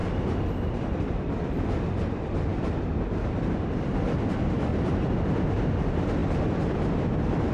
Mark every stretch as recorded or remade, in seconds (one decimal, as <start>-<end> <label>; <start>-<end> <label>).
0.0-4.7 remade; 4.7-5.8 recorded; 5.8-7.5 remade